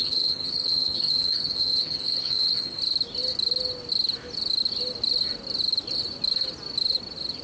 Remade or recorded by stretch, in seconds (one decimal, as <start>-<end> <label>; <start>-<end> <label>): 0.0-2.8 remade; 2.8-7.4 recorded